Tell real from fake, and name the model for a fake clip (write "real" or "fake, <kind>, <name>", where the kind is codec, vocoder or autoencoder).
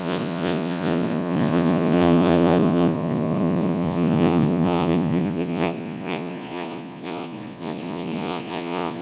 fake, vocoder, Vocos